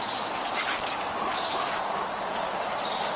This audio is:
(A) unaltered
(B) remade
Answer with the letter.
B